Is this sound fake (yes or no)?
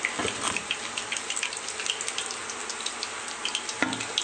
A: no